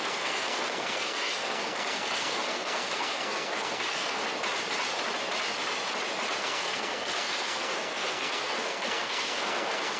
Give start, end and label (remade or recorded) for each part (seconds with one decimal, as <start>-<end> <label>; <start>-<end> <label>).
0.0-4.2 remade; 4.2-6.4 recorded; 6.4-10.0 remade